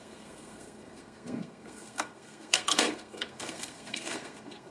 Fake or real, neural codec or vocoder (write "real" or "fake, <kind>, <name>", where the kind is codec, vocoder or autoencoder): fake, codec, SNAC